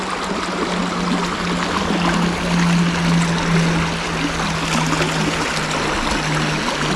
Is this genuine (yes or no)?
yes